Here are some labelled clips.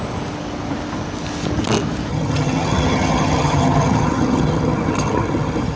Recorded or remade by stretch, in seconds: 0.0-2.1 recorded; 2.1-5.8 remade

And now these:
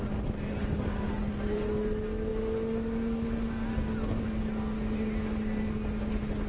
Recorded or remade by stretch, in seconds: 0.0-6.5 recorded

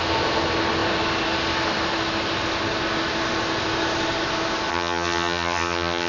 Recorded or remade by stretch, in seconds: 0.0-4.7 recorded; 4.7-6.1 remade

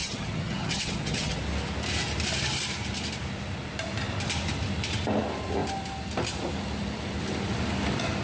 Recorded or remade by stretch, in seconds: 0.0-1.4 remade; 1.4-8.2 recorded

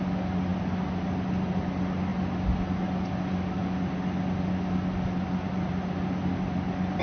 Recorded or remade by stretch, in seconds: 0.0-7.0 recorded

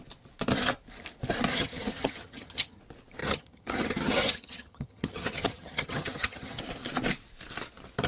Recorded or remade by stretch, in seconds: 0.0-1.5 recorded; 1.5-2.8 remade; 2.8-3.2 recorded; 3.2-6.6 remade; 6.6-8.1 recorded

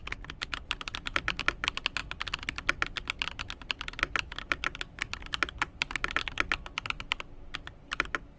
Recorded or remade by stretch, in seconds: 0.0-8.4 recorded